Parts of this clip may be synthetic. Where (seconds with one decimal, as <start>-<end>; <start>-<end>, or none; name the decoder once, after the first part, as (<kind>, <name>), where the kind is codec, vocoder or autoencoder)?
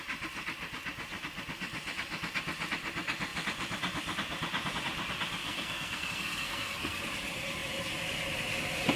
5.4-7.0 (codec, SNAC)